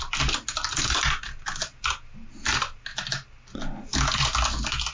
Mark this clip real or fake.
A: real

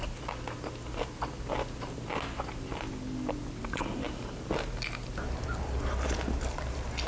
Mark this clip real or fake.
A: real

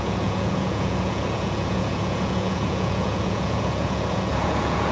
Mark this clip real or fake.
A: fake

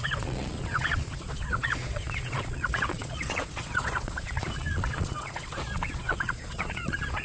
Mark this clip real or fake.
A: fake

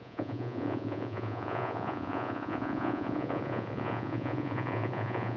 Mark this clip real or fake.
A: fake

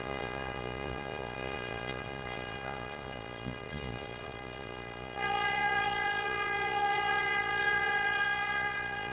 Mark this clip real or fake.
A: fake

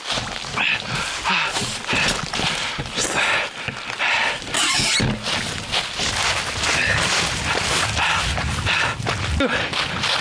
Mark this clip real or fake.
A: real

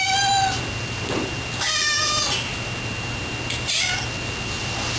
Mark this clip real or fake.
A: real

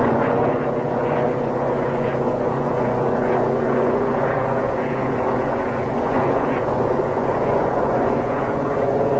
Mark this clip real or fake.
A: fake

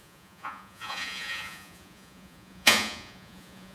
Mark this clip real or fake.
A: fake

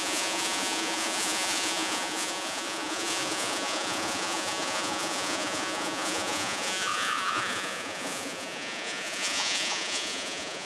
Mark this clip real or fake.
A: fake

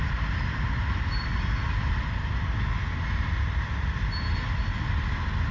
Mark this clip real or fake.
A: real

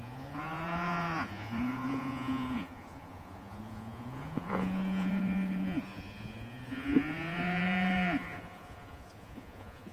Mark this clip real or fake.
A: fake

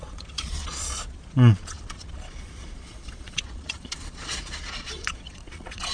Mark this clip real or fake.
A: fake